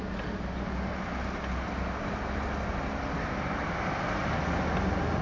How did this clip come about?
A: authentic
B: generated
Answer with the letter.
A